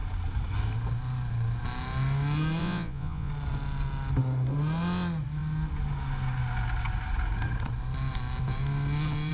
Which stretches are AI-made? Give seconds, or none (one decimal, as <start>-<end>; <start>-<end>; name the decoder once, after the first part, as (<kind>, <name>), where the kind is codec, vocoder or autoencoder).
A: 2.6-3.3 (vocoder, Vocos)